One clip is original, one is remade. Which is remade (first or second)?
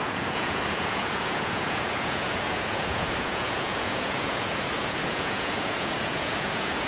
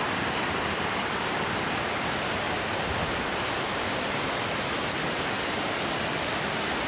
first